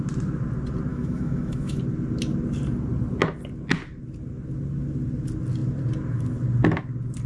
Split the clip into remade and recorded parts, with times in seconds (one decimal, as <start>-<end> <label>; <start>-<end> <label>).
0.0-0.9 recorded; 0.9-1.8 remade; 1.8-7.3 recorded